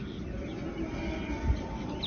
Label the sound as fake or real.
real